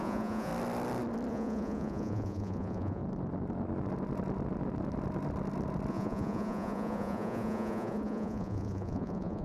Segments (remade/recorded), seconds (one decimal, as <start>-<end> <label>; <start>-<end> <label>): 0.0-0.5 remade; 0.5-1.3 recorded; 1.3-3.0 remade; 3.0-5.9 recorded; 5.9-9.4 remade